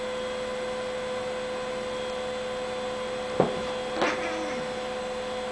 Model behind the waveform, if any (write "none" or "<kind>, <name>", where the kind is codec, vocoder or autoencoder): none